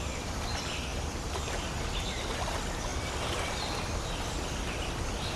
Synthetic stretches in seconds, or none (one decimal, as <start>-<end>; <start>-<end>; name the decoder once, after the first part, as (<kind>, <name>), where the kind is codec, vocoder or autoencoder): none